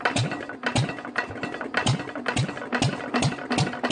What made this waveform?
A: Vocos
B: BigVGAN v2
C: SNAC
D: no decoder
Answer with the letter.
D